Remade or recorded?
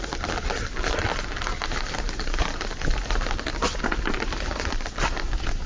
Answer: recorded